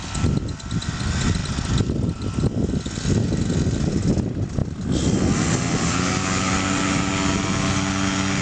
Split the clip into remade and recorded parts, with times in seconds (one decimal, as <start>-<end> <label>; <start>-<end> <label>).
0.0-8.4 recorded